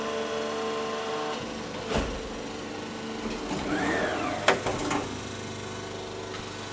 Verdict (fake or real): real